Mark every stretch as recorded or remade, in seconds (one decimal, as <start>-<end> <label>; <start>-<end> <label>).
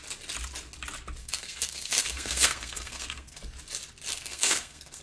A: 0.0-1.2 recorded; 1.2-3.4 remade; 3.4-4.1 recorded; 4.1-5.0 remade